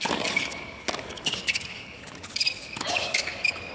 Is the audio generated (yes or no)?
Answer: yes